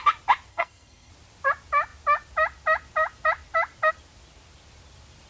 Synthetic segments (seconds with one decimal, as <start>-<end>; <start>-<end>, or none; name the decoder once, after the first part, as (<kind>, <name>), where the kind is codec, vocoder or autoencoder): 0.5-1.1 (codec, SNAC)

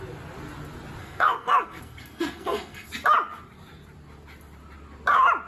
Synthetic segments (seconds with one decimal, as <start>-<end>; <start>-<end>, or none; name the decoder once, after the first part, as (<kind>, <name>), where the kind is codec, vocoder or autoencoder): 1.0-2.9 (codec, SNAC)